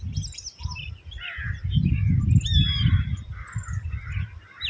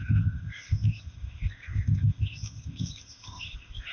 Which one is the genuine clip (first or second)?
first